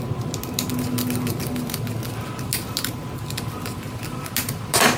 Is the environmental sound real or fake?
real